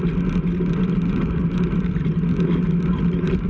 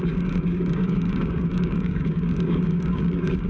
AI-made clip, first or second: second